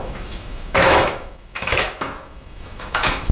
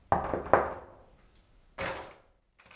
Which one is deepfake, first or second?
first